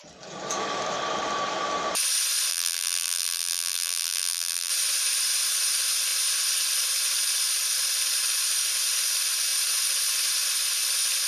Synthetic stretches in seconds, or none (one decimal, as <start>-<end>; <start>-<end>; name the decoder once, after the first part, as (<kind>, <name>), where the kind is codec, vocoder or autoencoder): 2.5-4.7 (vocoder, BigVGAN v2)